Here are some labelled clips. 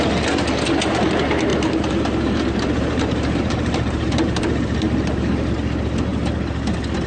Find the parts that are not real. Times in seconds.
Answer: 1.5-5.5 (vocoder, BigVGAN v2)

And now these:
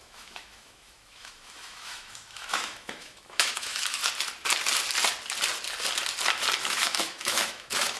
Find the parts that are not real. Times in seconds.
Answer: 0.0-4.0 (autoencoder, DAC-VAE); 6.6-8.0

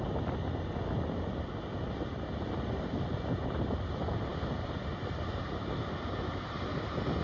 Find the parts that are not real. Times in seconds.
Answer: none

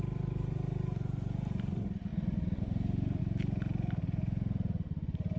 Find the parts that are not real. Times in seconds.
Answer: none

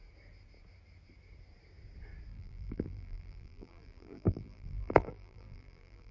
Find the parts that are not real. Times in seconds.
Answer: 2.3-6.1 (vocoder, BigVGAN v2)

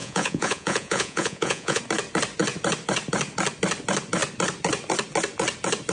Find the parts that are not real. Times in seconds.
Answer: 0.0-1.8 (vocoder, Vocos)

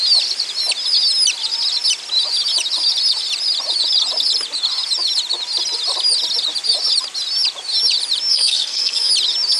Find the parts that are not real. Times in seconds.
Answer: 8.3-9.1 (codec, SNAC)

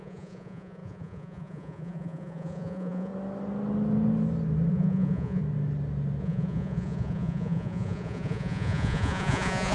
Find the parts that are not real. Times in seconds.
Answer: 0.0-3.1 (vocoder, Vocos); 4.7-5.4; 6.2-9.7